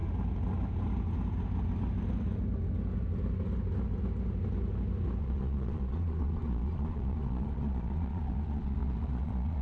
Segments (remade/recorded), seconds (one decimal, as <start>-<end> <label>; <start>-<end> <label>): 0.0-5.2 recorded; 5.2-9.6 remade